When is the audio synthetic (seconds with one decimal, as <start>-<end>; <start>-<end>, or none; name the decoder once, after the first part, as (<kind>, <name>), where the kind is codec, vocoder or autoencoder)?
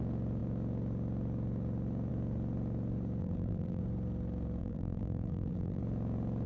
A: 3.2-3.8 (vocoder, BigVGAN v2); 4.6-5.8